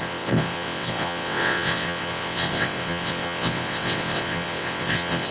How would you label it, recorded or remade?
remade